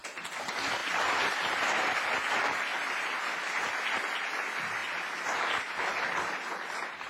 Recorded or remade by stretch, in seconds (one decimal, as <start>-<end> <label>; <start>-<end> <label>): 0.0-0.8 recorded; 0.8-2.3 remade; 2.3-7.1 recorded